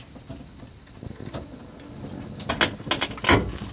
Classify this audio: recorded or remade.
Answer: recorded